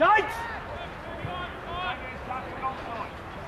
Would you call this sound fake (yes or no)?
no